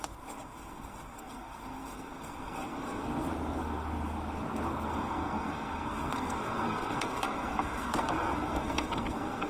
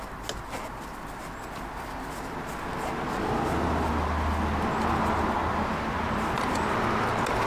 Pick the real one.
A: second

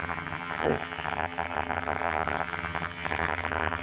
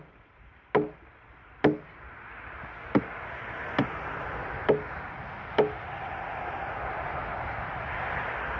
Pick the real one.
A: second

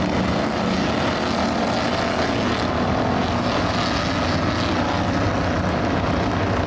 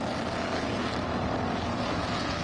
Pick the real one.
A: first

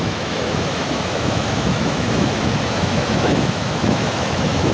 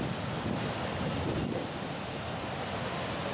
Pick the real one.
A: second